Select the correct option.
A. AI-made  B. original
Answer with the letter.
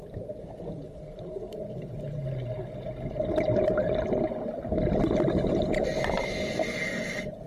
B